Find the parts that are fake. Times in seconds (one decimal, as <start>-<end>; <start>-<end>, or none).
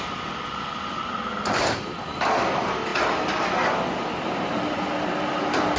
none